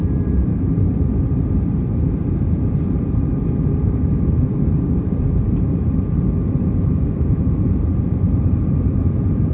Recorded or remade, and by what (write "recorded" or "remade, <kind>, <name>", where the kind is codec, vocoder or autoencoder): remade, vocoder, BigVGAN v2